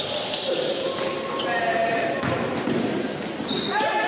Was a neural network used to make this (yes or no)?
no